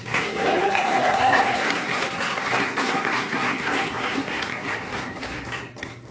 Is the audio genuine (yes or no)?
no